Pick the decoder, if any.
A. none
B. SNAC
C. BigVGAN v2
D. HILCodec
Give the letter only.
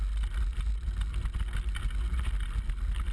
A